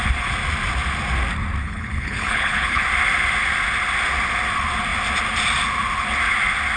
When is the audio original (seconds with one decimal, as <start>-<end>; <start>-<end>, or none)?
0.0-1.6; 2.8-6.8